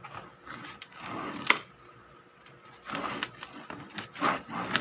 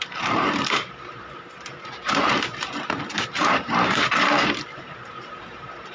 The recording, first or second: first